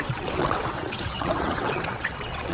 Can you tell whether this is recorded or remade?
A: remade